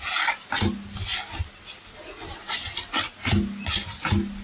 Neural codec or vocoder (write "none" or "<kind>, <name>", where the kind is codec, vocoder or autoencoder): none